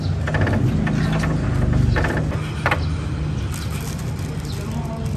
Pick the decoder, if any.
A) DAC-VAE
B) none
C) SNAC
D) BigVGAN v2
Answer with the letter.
B